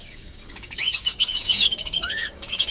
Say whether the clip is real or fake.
fake